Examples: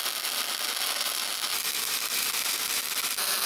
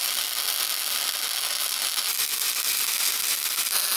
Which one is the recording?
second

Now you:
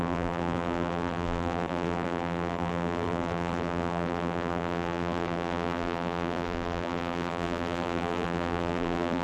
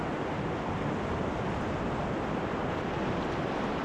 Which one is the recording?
second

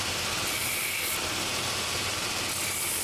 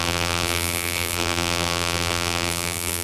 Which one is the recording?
first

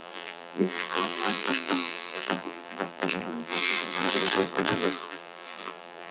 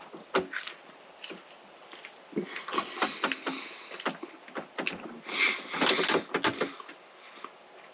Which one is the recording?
second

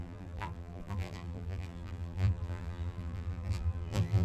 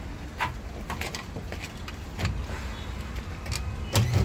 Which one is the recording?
second